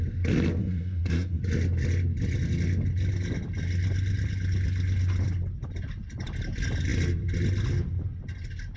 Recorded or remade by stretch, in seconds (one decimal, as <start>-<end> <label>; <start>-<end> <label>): 0.0-0.6 recorded; 0.6-1.4 remade; 1.4-8.8 recorded